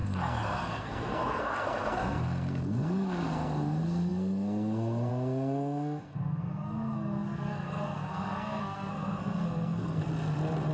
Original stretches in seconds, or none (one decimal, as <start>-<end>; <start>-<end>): 10.1-10.7